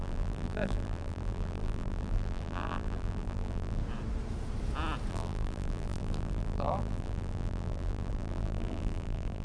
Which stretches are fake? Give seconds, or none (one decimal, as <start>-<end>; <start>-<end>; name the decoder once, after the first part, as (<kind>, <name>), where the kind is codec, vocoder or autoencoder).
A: 0.0-3.8 (vocoder, BigVGAN v2); 5.1-9.4